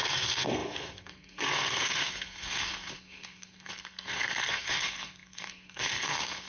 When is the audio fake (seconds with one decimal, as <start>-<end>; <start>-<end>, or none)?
0.0-6.5